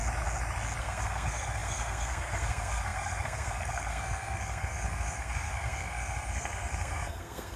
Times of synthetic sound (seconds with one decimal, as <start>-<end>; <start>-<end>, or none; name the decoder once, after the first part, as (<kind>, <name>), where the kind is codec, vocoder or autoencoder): 0.8-7.6 (codec, SNAC)